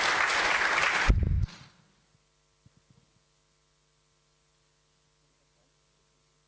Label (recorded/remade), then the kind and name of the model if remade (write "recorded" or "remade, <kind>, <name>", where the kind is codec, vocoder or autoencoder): recorded